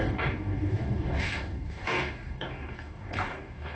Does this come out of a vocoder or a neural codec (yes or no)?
yes